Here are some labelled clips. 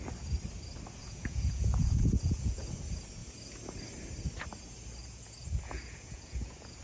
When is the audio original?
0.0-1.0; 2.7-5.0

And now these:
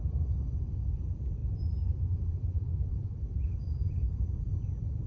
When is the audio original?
0.0-1.4; 4.5-5.1

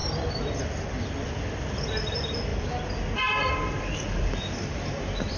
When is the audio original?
0.0-5.4

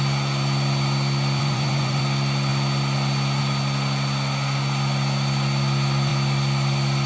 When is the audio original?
0.0-1.4; 2.0-7.1

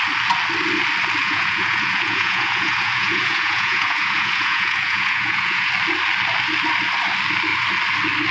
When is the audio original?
0.0-1.2; 5.7-8.3

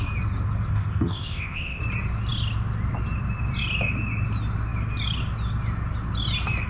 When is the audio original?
0.0-0.7; 1.8-6.7

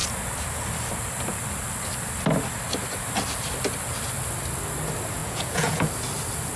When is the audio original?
0.0-5.2; 5.9-6.6